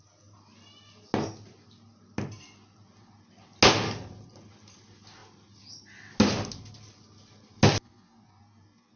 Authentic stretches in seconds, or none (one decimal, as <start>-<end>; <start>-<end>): 0.0-9.0